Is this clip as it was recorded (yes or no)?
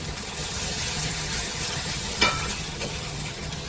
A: no